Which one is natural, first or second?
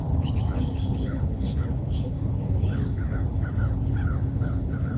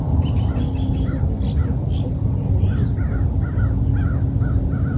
second